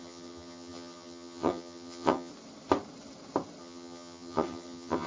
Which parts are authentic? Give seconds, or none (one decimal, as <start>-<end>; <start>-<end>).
2.3-3.6